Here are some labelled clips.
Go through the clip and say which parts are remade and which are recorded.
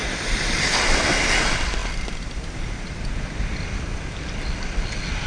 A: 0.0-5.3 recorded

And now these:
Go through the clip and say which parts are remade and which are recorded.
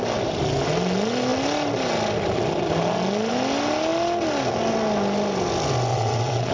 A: 0.0-5.9 recorded; 5.9-6.5 remade